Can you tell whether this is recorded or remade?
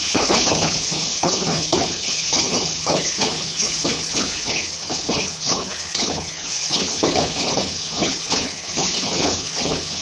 remade